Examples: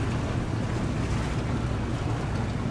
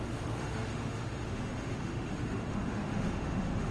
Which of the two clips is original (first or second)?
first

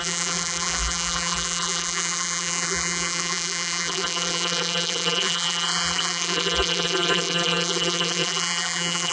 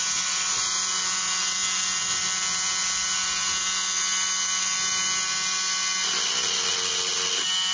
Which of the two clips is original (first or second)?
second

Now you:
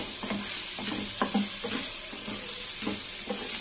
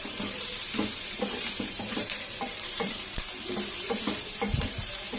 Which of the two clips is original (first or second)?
first